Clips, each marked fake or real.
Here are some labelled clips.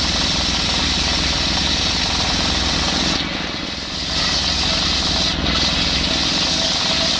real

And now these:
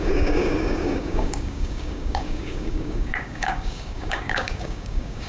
fake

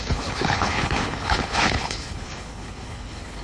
fake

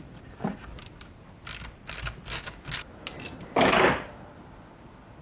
real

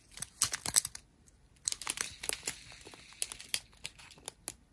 real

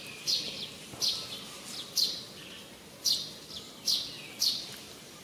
real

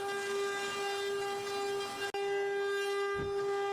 real